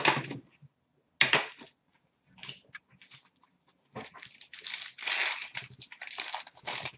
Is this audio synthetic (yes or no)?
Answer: no